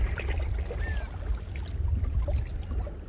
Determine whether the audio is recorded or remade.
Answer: recorded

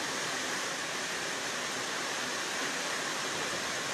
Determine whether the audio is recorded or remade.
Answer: recorded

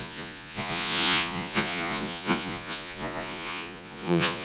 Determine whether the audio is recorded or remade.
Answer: remade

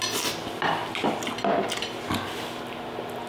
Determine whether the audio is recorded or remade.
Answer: recorded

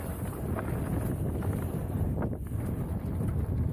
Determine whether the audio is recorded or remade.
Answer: recorded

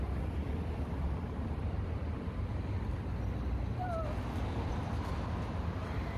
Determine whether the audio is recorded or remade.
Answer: recorded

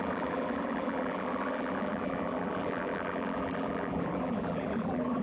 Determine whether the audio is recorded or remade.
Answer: remade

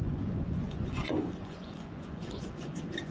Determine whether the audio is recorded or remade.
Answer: remade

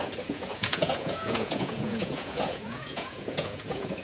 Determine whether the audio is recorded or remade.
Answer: remade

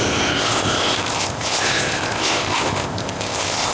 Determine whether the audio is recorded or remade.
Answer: remade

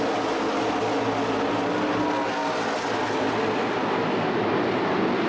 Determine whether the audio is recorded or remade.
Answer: recorded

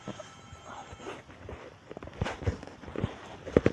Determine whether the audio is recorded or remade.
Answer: recorded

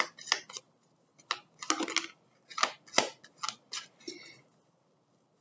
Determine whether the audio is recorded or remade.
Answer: recorded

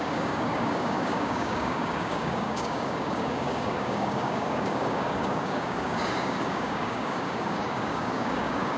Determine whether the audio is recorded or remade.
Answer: remade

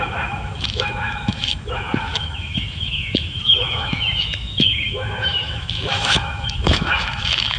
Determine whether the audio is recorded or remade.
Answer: remade